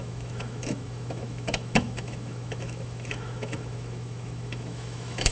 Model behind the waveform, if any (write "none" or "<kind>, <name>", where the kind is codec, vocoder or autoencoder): autoencoder, DAC-VAE